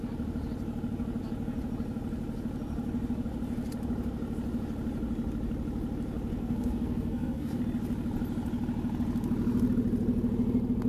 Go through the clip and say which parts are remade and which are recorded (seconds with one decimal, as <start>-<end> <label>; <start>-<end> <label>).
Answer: 0.0-6.4 recorded; 6.4-7.6 remade; 7.6-10.9 recorded